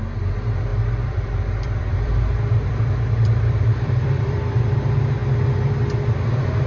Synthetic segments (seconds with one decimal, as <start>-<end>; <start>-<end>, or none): 0.7-4.6